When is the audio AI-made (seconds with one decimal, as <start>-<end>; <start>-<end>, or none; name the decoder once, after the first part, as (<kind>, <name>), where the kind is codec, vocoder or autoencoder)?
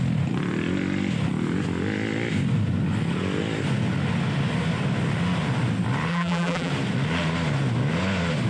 6.1-6.7 (vocoder, BigVGAN v2)